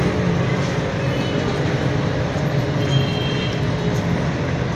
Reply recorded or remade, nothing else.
recorded